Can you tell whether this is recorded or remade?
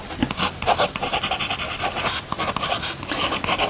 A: recorded